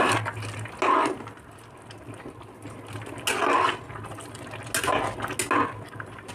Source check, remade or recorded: recorded